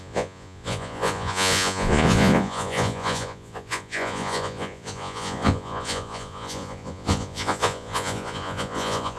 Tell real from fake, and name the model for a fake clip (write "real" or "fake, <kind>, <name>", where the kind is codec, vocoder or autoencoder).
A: fake, vocoder, Vocos